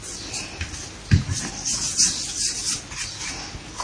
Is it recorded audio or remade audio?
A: recorded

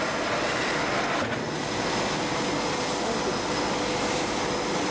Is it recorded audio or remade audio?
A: recorded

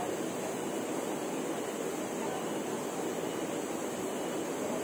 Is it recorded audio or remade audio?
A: recorded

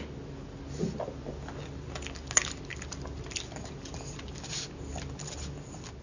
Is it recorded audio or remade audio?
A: recorded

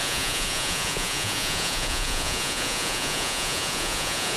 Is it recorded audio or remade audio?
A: remade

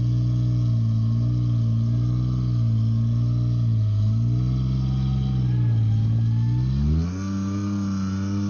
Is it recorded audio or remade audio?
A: recorded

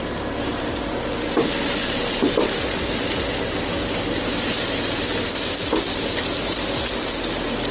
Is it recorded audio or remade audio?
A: recorded